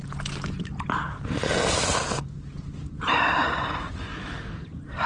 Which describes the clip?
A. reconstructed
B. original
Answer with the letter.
B